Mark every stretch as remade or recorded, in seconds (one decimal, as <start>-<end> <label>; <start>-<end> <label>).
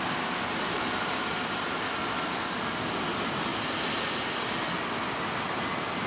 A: 0.0-6.1 recorded